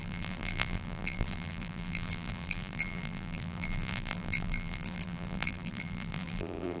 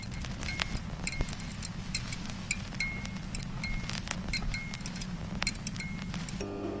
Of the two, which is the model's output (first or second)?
first